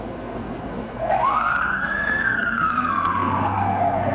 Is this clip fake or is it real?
fake